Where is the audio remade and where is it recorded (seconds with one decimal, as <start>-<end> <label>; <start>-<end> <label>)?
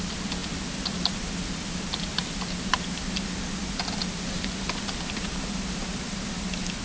0.0-6.8 recorded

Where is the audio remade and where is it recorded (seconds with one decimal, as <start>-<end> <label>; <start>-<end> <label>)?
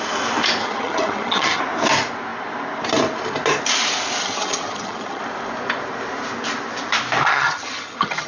0.0-0.6 recorded; 0.6-1.6 remade; 1.6-4.2 recorded; 4.2-5.2 remade; 5.2-7.3 recorded; 7.3-8.3 remade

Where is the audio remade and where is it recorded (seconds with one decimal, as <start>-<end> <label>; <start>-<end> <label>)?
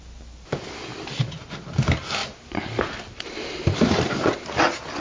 0.0-5.0 recorded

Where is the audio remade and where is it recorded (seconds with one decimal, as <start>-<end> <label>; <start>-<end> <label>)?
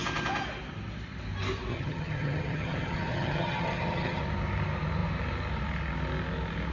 0.0-1.7 recorded; 1.7-4.2 remade; 4.2-6.7 recorded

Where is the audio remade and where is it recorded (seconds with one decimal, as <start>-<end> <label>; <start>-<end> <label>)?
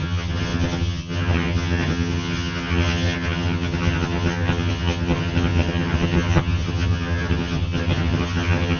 0.0-8.8 remade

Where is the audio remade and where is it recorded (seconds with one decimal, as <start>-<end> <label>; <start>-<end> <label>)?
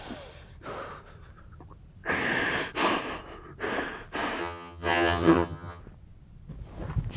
0.0-4.4 recorded; 4.4-5.8 remade; 5.8-7.2 recorded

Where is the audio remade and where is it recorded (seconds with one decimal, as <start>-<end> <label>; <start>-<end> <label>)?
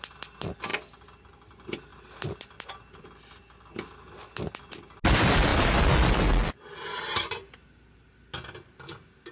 0.0-9.3 recorded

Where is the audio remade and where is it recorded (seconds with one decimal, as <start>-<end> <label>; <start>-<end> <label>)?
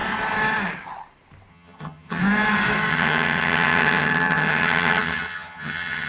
0.0-1.5 recorded; 1.5-2.2 remade; 2.2-2.9 recorded; 2.9-6.1 remade